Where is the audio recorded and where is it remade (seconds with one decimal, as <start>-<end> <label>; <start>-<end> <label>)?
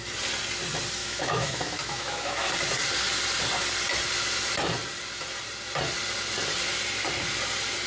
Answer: 0.0-1.0 recorded; 1.0-2.5 remade; 2.5-7.9 recorded